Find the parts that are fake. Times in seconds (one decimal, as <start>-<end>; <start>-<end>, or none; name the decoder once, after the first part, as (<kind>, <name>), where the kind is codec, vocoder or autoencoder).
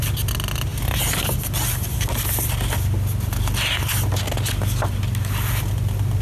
none